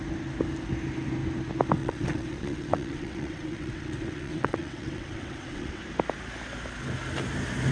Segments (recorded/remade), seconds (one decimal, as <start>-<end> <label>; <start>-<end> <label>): 0.0-1.8 recorded; 1.8-5.8 remade; 5.8-7.7 recorded